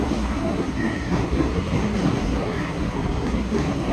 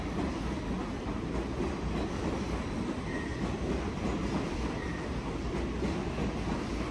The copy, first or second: first